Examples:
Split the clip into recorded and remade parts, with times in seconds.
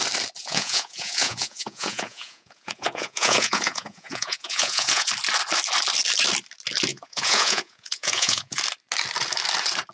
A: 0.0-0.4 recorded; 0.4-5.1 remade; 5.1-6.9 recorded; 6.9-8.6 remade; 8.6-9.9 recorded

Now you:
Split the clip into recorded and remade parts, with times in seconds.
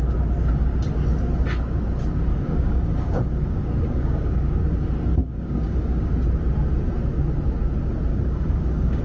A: 0.0-2.3 recorded; 2.3-4.6 remade; 4.6-5.1 recorded; 5.1-6.1 remade; 6.1-8.1 recorded; 8.1-9.0 remade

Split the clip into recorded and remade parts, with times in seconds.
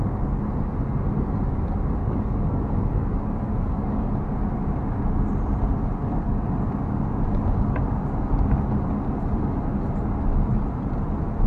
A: 0.0-2.0 recorded; 2.0-4.1 remade; 4.1-6.0 recorded; 6.0-6.5 remade; 6.5-11.5 recorded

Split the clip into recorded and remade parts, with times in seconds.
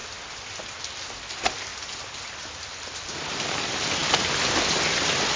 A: 0.0-0.8 recorded; 0.8-1.7 remade; 1.7-2.4 recorded; 2.4-4.0 remade; 4.0-5.4 recorded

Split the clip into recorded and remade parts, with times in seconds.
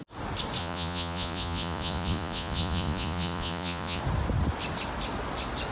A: 0.0-0.6 recorded; 0.6-4.0 remade; 4.0-5.7 recorded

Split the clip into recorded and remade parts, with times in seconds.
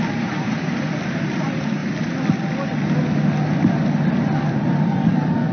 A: 0.0-1.8 remade; 1.8-4.5 recorded; 4.5-5.5 remade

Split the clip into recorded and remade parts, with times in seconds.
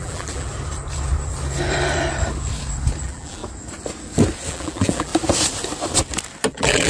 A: 0.0-0.5 remade; 0.5-3.0 recorded; 3.0-3.4 remade; 3.4-4.5 recorded; 4.5-5.1 remade; 5.1-6.5 recorded; 6.5-6.9 remade